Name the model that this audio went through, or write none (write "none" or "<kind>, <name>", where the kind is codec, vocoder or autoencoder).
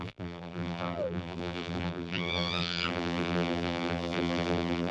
vocoder, BigVGAN v2